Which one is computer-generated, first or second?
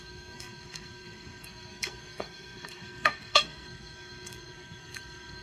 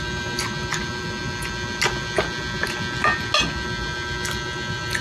first